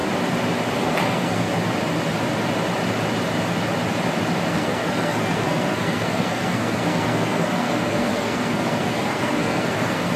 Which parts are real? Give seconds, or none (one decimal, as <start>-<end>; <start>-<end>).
0.0-0.7; 1.5-4.5